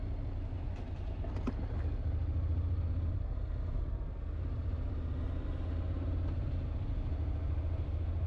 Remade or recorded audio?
recorded